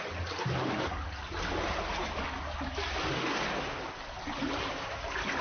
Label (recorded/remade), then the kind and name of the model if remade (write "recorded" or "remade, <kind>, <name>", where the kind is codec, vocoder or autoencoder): recorded